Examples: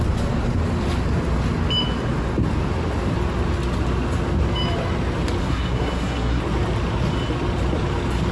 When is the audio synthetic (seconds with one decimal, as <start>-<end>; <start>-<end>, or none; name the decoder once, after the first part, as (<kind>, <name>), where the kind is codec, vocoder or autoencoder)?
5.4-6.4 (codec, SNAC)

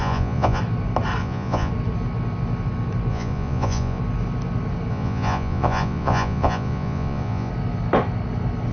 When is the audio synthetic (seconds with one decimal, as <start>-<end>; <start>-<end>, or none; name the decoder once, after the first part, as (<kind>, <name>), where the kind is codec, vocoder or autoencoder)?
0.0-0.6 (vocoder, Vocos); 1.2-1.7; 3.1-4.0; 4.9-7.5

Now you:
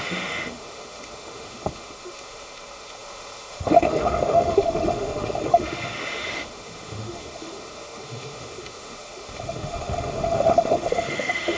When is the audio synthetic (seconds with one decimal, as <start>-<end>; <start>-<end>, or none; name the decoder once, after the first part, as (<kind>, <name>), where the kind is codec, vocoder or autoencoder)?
0.0-11.6 (autoencoder, DAC-VAE)

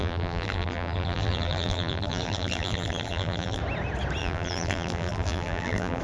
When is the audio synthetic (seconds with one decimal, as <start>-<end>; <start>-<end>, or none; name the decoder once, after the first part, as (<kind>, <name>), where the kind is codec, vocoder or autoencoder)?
0.0-3.6 (vocoder, BigVGAN v2); 4.2-6.0

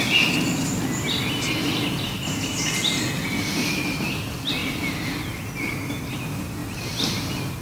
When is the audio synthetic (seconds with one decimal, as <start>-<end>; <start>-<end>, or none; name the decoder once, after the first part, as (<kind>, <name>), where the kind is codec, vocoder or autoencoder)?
none